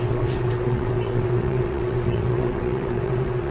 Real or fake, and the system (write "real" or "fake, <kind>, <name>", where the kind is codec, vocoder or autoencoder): fake, vocoder, WaveNeXt